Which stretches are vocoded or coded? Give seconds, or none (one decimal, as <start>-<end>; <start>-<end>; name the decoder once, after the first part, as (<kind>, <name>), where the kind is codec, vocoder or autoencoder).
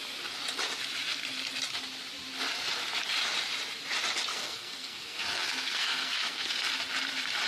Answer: 4.3-6.5 (codec, SNAC)